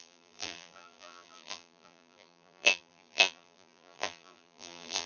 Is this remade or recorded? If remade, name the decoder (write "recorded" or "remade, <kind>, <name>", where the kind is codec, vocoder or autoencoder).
remade, vocoder, BigVGAN v2